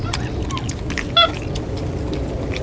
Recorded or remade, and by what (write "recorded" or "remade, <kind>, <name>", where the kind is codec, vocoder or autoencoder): recorded